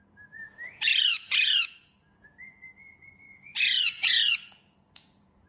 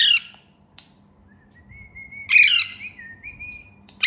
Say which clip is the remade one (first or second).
first